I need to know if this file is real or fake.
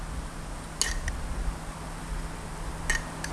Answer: real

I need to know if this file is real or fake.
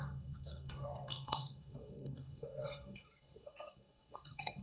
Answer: fake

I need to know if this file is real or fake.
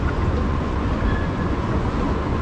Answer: fake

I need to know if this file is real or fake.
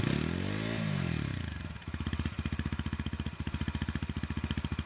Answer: real